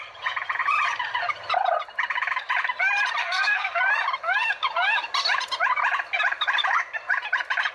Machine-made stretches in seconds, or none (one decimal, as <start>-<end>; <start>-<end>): 3.2-3.7